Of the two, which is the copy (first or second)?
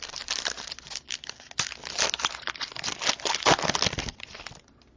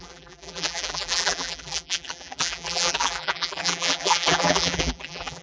second